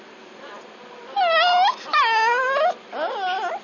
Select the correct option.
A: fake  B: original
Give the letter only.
B